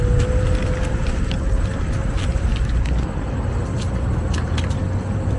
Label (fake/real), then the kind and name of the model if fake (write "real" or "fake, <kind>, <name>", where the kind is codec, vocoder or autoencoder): real